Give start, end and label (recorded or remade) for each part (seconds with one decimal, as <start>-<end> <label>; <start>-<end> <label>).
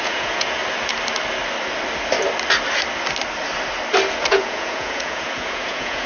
0.0-0.6 remade; 0.6-4.3 recorded; 4.3-6.1 remade